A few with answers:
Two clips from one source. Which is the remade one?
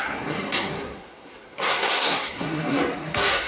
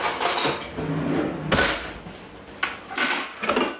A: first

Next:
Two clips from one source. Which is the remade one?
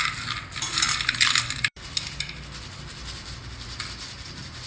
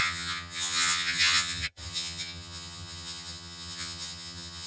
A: second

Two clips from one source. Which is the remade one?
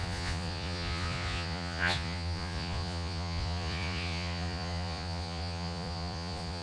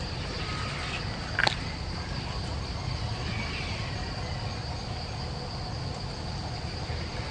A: first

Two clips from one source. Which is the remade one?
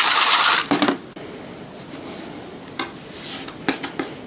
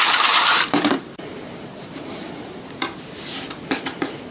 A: second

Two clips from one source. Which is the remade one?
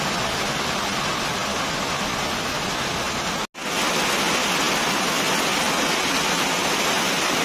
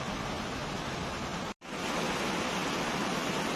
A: second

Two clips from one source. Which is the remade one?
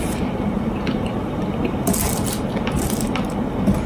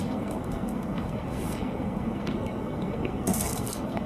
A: second